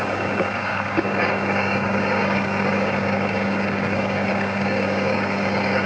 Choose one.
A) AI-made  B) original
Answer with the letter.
A